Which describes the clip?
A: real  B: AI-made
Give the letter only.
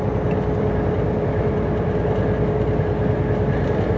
A